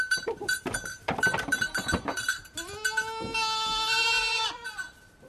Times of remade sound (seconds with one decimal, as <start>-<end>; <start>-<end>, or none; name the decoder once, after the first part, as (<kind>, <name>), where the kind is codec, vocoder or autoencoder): 0.0-2.4 (vocoder, BigVGAN v2); 4.2-5.3